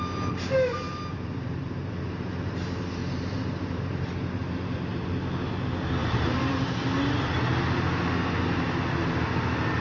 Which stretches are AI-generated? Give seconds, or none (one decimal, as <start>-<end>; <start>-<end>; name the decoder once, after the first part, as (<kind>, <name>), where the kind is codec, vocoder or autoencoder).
1.1-2.6 (vocoder, BigVGAN v2); 3.0-4.4; 6.0-6.8